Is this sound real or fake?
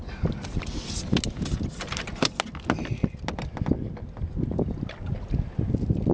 real